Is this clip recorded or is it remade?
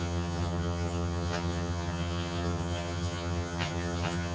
remade